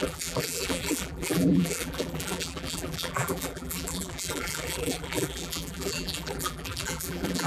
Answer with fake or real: fake